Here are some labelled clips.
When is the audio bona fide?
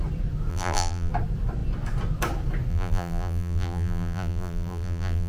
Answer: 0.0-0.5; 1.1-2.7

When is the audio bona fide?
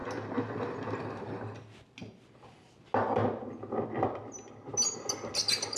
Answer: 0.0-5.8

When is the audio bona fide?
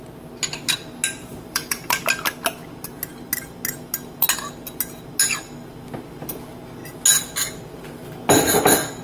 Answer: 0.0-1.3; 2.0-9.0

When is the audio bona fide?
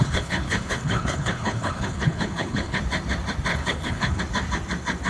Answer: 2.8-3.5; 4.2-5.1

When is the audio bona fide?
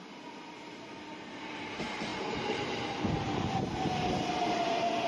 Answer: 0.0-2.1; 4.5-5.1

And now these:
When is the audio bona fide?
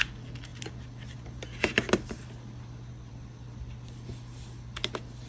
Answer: 0.0-5.3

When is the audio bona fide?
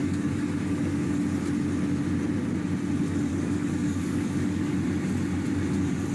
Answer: 1.1-3.3; 4.7-6.1